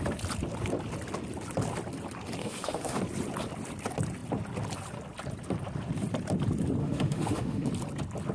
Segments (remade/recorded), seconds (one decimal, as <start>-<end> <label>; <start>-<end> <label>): 0.0-2.4 recorded; 2.4-3.0 remade; 3.0-6.8 recorded; 6.8-7.7 remade; 7.7-8.3 recorded